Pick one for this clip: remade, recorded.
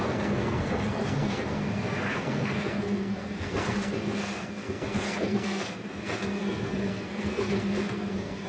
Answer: remade